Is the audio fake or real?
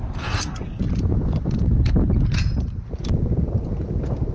real